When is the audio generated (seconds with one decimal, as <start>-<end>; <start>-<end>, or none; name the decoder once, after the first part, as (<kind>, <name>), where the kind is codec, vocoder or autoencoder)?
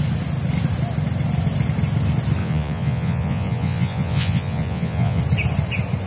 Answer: 2.4-5.2 (vocoder, Vocos)